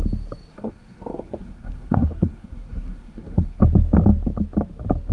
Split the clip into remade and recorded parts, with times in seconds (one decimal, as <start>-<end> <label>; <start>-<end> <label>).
0.0-0.5 recorded; 0.5-3.6 remade; 3.6-5.1 recorded